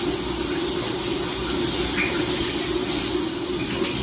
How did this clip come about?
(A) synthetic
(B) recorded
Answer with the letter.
B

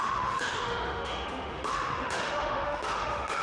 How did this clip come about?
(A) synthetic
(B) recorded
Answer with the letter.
A